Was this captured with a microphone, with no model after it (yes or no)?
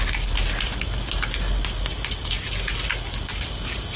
yes